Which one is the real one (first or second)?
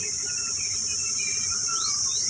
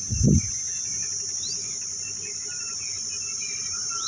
second